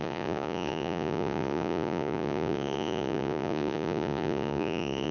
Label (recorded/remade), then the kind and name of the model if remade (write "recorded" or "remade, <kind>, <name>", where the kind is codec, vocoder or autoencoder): remade, vocoder, Vocos